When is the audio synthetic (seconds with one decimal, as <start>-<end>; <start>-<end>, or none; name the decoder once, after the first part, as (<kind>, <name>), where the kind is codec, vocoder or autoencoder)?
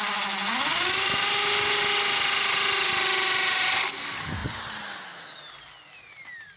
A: none